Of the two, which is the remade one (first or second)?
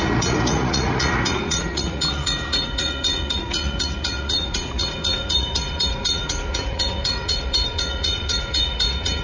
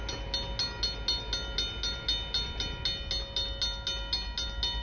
first